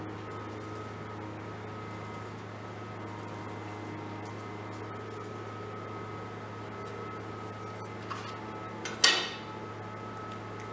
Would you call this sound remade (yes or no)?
no